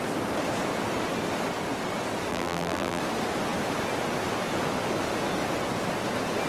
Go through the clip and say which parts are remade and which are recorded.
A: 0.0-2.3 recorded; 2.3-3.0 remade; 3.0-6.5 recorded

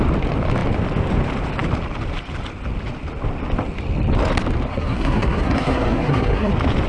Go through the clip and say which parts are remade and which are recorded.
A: 0.0-4.7 recorded; 4.7-6.5 remade; 6.5-6.9 recorded

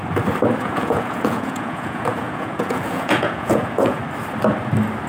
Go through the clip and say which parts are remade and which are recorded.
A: 0.0-0.6 recorded; 0.6-4.0 remade; 4.0-5.1 recorded